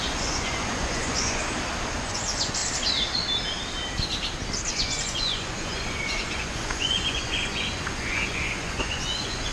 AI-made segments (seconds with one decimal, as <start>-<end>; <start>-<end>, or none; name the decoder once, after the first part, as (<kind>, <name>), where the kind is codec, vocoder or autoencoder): 0.0-1.4 (vocoder, Vocos); 1.9-2.6; 4.7-9.5